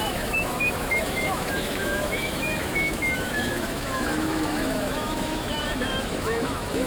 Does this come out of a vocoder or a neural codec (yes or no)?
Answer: yes